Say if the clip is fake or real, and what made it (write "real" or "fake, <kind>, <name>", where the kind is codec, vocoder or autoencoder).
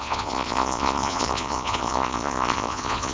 fake, vocoder, Vocos